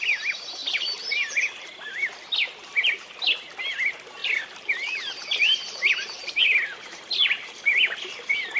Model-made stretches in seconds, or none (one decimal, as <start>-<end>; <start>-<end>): 0.6-2.9; 4.2-6.3